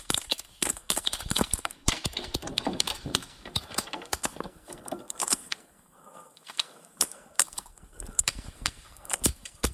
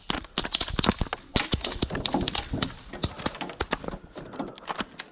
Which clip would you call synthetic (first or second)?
first